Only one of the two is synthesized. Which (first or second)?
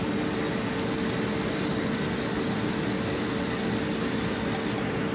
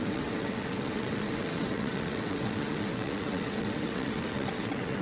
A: second